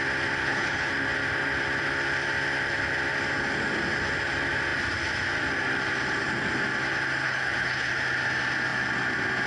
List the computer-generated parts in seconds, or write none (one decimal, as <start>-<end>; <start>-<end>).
0.4-0.9; 7.2-7.9